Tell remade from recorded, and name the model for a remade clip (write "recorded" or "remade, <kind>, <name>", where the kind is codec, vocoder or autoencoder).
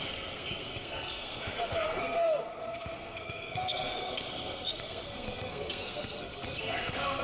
remade, codec, SNAC